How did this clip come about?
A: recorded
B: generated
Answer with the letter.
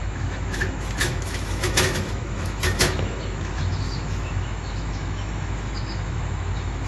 B